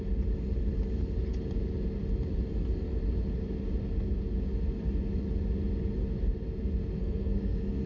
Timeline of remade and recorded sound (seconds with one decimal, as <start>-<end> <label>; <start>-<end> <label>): 0.0-7.0 recorded; 7.0-7.9 remade